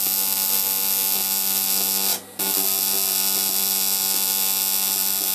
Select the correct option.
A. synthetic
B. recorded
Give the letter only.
B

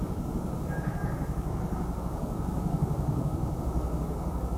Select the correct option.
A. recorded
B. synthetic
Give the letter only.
B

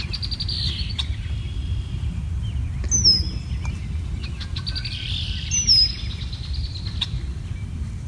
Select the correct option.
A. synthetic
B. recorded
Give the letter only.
B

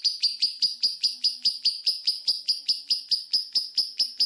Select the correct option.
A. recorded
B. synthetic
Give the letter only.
A